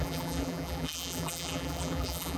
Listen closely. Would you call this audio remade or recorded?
remade